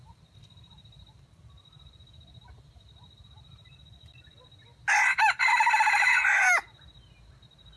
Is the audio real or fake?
real